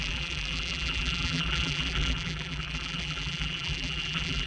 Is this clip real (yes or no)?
no